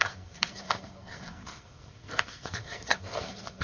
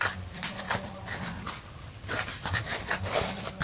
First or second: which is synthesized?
first